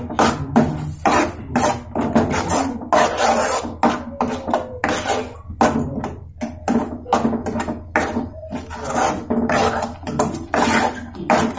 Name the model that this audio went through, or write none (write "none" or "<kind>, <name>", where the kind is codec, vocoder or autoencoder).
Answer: none